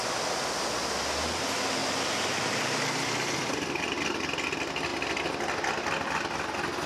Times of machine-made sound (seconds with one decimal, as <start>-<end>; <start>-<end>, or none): 1.8-3.5